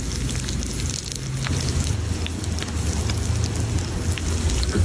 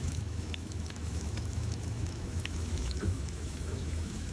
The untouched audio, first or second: first